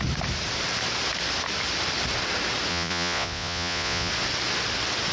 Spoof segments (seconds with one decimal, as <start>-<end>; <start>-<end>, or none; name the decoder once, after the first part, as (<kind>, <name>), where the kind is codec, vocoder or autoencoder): 2.7-4.1 (vocoder, Vocos)